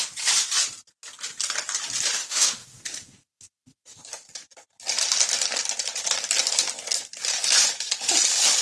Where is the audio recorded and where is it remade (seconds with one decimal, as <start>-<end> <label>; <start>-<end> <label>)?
0.0-2.2 recorded; 2.2-4.0 remade; 4.0-8.6 recorded